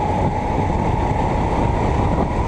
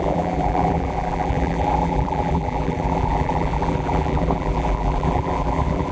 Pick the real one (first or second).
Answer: first